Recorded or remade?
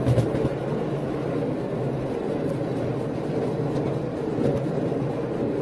recorded